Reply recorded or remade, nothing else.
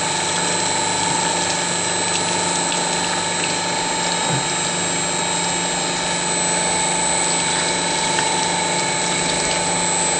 recorded